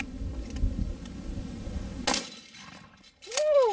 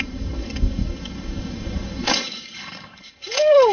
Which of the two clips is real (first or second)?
first